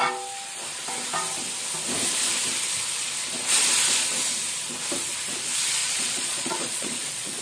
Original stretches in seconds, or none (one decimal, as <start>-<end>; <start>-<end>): 0.0-5.8